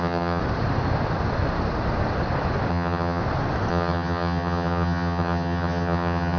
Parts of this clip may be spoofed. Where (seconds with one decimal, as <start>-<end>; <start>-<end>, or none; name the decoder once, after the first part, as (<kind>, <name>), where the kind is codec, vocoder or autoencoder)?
0.0-0.4 (vocoder, HiFi-GAN); 2.7-3.2; 3.7-6.4